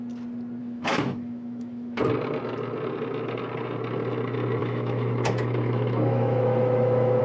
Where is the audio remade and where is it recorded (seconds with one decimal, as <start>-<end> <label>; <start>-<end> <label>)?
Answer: 0.0-0.6 recorded; 0.6-2.0 remade; 2.0-4.6 recorded; 4.6-7.2 remade